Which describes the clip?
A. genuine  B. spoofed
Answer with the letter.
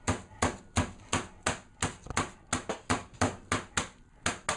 A